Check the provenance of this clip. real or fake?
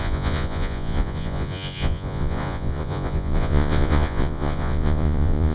fake